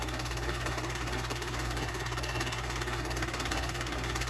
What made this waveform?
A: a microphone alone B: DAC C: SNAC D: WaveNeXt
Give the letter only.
C